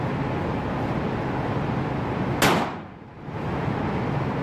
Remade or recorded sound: recorded